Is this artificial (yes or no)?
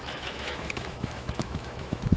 yes